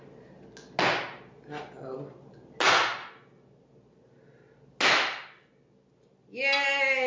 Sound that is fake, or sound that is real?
real